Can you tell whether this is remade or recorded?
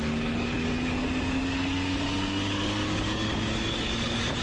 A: remade